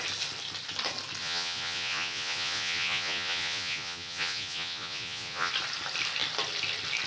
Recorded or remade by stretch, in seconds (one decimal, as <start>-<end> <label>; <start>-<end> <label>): 0.0-1.2 recorded; 1.2-5.5 remade; 5.5-7.1 recorded